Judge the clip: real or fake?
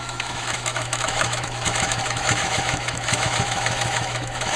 fake